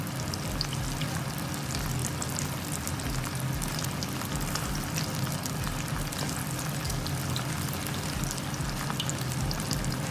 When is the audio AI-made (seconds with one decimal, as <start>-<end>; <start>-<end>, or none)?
none